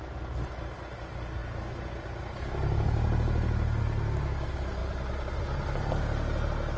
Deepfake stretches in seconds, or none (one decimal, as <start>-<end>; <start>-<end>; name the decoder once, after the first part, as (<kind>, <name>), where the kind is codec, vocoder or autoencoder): 4.8-5.4 (vocoder, BigVGAN v2)